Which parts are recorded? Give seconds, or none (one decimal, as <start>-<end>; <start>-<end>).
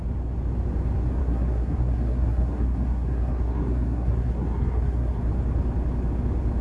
0.0-1.2; 5.2-6.6